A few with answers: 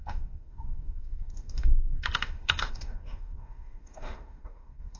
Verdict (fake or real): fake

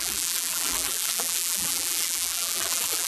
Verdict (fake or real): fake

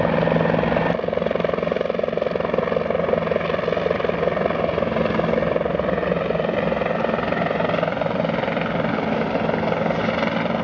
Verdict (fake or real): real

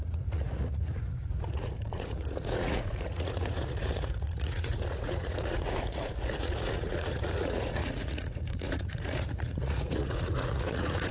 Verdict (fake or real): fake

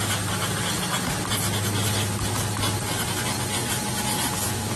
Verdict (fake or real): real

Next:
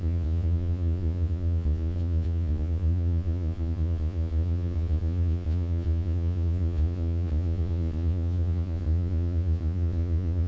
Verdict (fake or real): fake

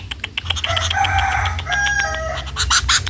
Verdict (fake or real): real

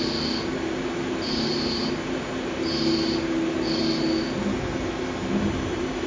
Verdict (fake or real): real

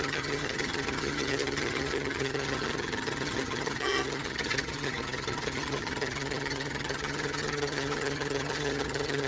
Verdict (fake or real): fake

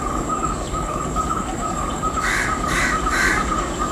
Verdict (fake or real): fake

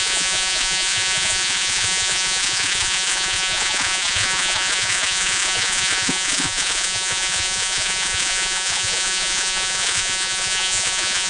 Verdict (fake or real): fake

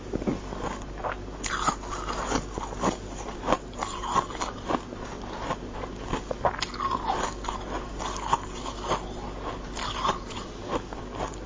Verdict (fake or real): real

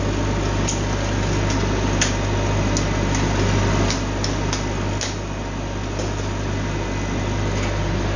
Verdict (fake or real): real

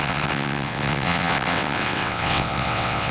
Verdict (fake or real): fake